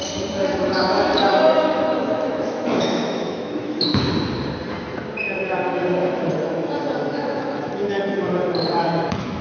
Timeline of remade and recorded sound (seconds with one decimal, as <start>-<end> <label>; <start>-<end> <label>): 0.0-0.5 recorded; 0.5-4.0 remade; 4.0-6.0 recorded; 6.0-9.4 remade